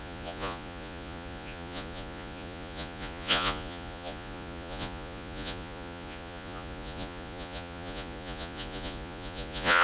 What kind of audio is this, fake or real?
fake